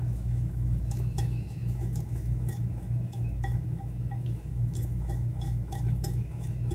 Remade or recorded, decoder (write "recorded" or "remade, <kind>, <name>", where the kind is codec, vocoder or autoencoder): remade, autoencoder, DAC-VAE